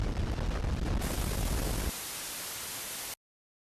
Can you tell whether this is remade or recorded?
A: recorded